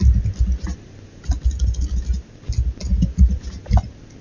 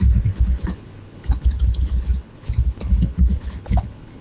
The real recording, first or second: first